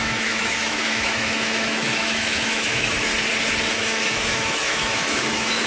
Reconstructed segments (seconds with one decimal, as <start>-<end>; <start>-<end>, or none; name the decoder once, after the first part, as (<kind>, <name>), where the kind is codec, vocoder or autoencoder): 0.0-3.1 (autoencoder, DAC-VAE); 3.7-5.7